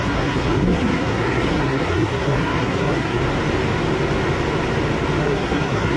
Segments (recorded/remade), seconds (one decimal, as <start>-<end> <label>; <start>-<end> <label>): 0.0-3.2 remade; 3.2-5.2 recorded; 5.2-6.0 remade